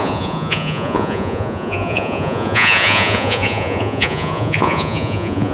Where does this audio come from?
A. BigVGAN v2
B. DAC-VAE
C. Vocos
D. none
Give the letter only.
C